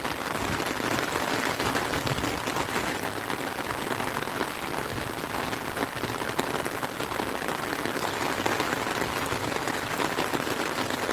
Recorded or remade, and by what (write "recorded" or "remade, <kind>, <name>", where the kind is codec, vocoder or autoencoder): recorded